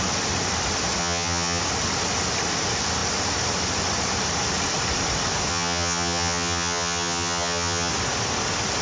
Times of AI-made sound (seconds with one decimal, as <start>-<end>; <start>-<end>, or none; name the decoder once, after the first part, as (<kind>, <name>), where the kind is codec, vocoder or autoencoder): 1.0-1.6 (vocoder, HiFi-GAN); 5.5-7.9